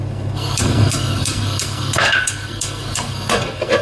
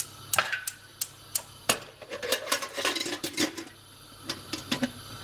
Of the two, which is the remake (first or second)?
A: first